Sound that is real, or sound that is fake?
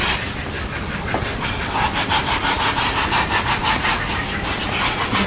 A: real